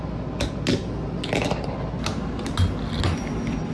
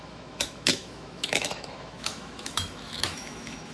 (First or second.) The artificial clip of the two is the second